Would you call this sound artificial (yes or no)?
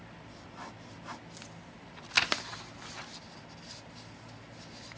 no